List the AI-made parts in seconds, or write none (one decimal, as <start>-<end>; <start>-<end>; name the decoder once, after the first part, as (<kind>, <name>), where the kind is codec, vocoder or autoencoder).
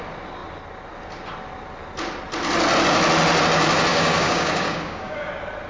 3.9-5.3 (codec, DAC)